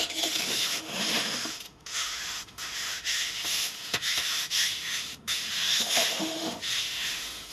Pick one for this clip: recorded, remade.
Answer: remade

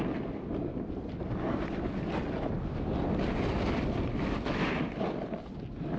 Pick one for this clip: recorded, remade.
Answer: recorded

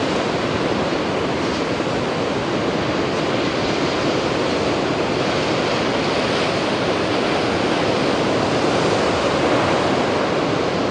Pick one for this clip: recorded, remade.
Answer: recorded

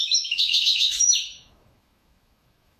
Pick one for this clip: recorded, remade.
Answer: remade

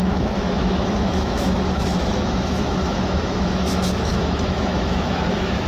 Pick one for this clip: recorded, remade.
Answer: remade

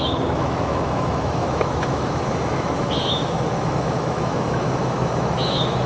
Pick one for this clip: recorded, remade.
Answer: remade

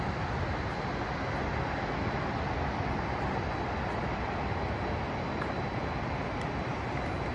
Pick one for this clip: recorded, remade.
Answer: recorded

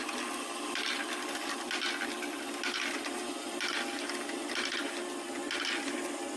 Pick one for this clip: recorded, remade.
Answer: recorded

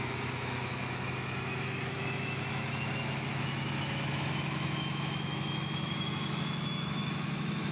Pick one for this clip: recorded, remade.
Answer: remade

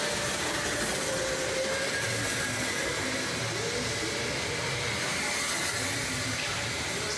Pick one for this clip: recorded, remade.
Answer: recorded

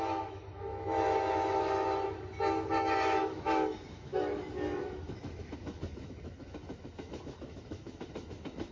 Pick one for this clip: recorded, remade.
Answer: remade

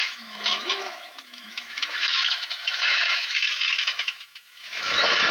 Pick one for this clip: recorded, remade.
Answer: remade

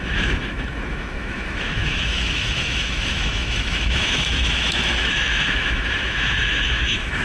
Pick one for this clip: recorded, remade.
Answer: remade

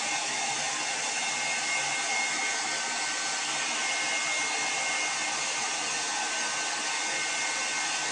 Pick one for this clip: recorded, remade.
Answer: recorded